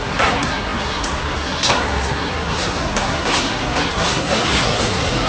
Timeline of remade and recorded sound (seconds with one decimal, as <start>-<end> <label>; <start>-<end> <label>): 0.0-5.3 remade